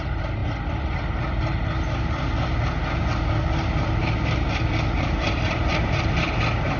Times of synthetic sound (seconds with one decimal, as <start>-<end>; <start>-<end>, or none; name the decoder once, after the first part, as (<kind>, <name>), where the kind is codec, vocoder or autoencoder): 4.0-6.8 (vocoder, BigVGAN v2)